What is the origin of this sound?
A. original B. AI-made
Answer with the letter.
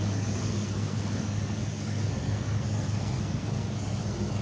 B